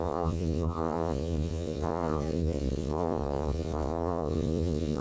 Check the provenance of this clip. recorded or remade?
remade